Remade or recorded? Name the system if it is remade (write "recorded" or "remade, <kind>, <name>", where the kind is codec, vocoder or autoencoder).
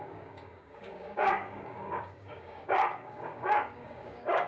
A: remade, codec, DAC